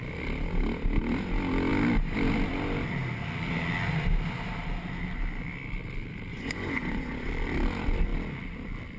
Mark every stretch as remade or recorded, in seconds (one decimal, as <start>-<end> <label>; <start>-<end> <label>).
0.0-6.3 recorded; 6.3-7.3 remade; 7.3-9.0 recorded